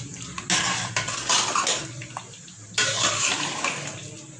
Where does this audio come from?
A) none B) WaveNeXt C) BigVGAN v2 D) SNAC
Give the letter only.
A